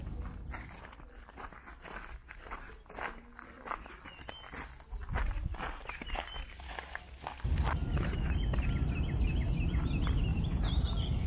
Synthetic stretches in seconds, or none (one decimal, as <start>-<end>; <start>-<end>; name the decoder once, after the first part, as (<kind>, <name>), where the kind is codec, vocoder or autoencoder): 2.2-2.7 (vocoder, BigVGAN v2); 7.8-8.4; 10.3-11.3